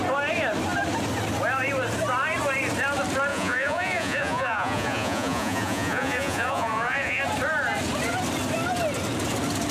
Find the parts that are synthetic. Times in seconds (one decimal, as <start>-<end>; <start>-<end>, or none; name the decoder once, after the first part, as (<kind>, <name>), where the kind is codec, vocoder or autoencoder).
3.3-7.2 (vocoder, Vocos)